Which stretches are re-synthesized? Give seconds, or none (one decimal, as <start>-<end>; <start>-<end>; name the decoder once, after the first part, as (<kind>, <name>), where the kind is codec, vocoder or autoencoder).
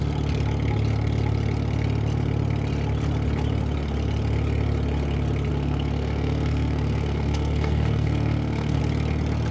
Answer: 5.5-8.8 (codec, SNAC)